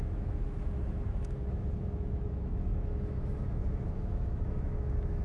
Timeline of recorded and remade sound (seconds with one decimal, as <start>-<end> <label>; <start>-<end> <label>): 0.0-5.2 remade